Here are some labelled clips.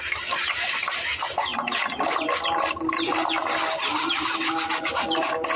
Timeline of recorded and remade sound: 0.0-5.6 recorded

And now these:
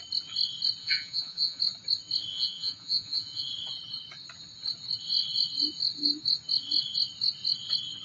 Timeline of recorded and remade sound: 0.0-0.8 recorded; 0.8-1.6 remade; 1.6-2.3 recorded; 2.3-3.5 remade; 3.5-8.0 recorded

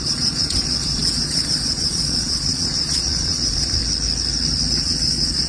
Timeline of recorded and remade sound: 0.0-3.8 remade; 3.8-4.7 recorded; 4.7-5.5 remade

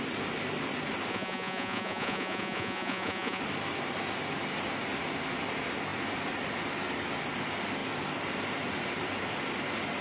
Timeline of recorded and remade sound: 0.0-1.1 recorded; 1.1-3.4 remade; 3.4-10.0 recorded